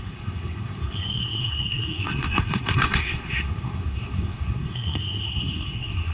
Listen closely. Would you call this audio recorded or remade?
remade